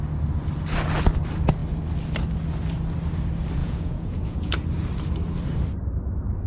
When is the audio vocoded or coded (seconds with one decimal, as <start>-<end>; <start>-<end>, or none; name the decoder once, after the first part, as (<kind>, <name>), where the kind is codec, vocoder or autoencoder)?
3.6-4.5 (vocoder, Vocos)